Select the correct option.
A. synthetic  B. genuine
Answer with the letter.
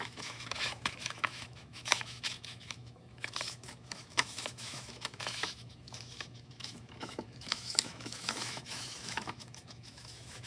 A